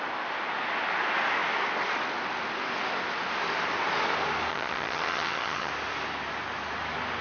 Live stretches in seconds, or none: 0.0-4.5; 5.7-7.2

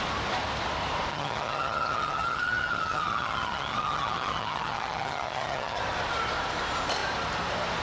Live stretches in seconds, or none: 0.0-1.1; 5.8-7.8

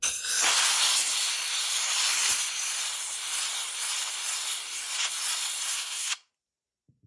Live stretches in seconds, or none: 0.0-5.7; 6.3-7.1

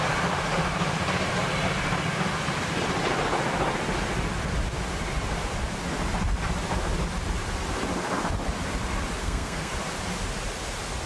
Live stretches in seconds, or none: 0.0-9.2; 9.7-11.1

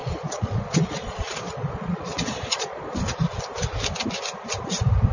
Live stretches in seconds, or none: 3.1-5.1